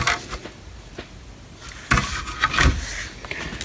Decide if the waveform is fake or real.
real